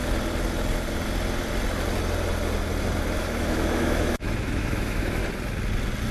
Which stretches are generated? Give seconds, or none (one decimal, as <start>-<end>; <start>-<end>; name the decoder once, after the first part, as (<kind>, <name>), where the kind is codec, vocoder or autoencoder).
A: 3.2-5.2 (autoencoder, DAC-VAE)